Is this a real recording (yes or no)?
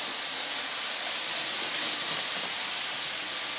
yes